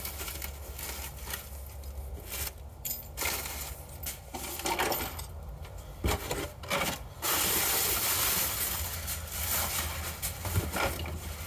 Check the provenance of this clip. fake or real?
real